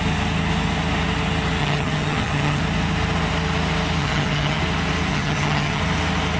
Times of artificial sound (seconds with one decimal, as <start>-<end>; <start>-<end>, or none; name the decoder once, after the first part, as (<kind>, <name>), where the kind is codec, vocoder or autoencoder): 1.6-2.6 (vocoder, HiFi-GAN); 4.0-4.6; 5.1-5.8